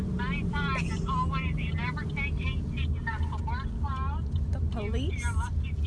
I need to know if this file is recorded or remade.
recorded